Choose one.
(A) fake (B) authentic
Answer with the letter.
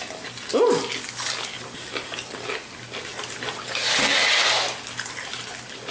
B